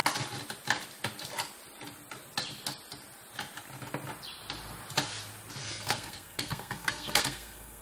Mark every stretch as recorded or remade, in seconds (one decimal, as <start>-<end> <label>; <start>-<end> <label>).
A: 0.0-5.6 recorded; 5.6-7.8 remade

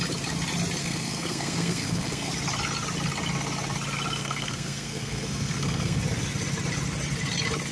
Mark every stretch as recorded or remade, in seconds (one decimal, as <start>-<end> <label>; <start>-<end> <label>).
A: 0.0-0.8 recorded; 0.8-2.3 remade; 2.3-4.2 recorded; 4.2-6.0 remade; 6.0-7.7 recorded

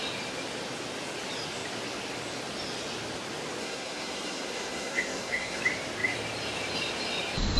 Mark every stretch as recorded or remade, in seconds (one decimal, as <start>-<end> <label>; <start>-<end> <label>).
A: 0.0-3.6 recorded; 3.6-5.6 remade; 5.6-7.6 recorded

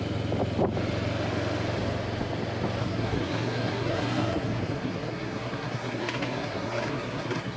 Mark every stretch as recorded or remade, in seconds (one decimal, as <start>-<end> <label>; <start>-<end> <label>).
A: 0.0-2.8 recorded; 2.8-7.6 remade

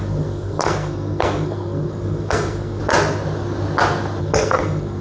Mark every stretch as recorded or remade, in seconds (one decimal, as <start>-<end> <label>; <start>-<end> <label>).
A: 0.0-2.8 remade; 2.8-4.2 recorded; 4.2-5.0 remade

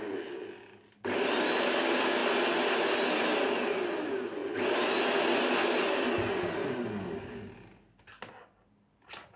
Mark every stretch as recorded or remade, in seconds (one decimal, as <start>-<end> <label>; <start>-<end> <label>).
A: 0.0-9.4 recorded

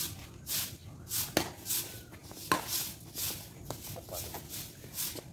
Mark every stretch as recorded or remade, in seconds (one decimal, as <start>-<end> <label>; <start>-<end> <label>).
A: 0.0-5.3 recorded

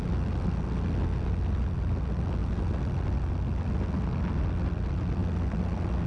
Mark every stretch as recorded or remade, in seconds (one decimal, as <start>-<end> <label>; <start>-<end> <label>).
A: 0.0-6.1 recorded